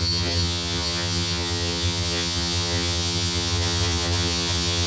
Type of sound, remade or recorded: remade